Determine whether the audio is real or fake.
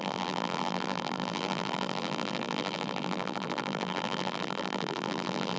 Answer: fake